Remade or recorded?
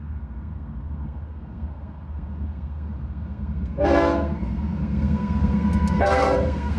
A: remade